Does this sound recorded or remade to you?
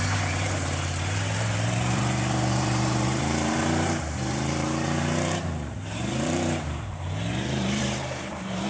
remade